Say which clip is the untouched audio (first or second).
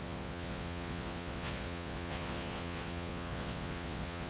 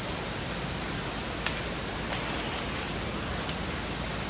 second